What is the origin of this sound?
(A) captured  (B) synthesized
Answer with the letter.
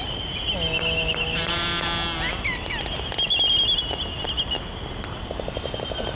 A